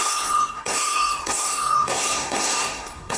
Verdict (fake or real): fake